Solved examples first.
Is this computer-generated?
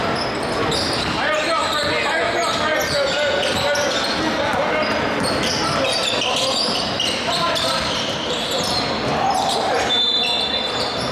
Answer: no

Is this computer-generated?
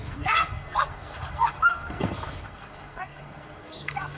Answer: yes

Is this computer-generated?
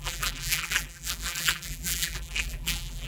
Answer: yes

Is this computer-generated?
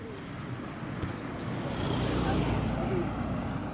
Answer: no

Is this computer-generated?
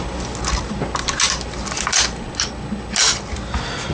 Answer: no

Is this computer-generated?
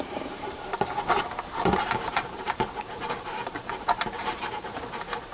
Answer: yes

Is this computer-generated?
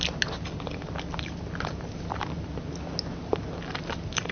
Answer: no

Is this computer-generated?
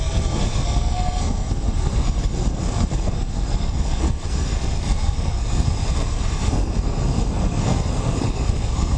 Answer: yes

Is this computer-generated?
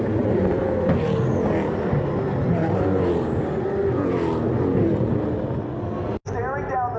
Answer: no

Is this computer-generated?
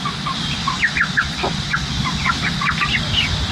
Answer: no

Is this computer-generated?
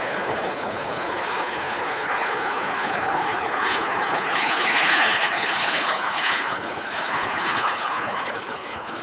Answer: yes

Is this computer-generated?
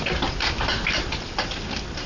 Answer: no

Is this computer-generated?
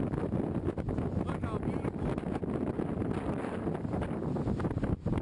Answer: no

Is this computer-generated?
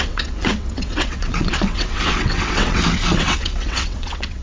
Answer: yes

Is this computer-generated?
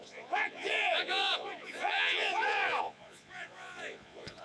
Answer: yes